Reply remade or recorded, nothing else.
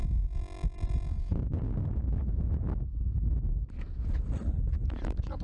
recorded